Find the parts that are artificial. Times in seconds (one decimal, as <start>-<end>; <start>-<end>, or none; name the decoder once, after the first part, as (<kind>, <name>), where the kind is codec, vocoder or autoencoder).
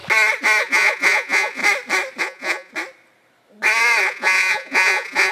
0.6-1.6 (vocoder, Vocos); 2.2-2.7; 4.0-5.3